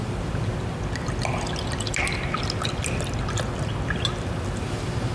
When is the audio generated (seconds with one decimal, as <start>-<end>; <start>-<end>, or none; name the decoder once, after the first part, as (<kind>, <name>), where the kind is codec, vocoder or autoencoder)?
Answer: none